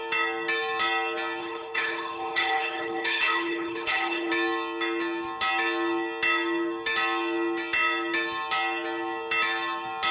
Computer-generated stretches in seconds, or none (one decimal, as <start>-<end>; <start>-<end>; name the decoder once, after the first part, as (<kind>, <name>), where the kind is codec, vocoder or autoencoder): 1.4-4.3 (codec, HILCodec)